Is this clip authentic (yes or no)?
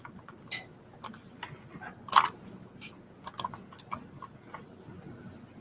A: yes